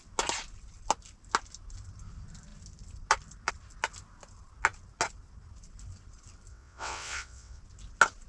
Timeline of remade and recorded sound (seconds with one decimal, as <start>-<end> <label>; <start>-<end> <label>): 0.0-6.5 recorded; 6.5-7.6 remade; 7.6-8.3 recorded